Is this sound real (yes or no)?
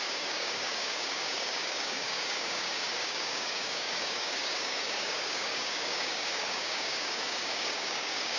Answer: no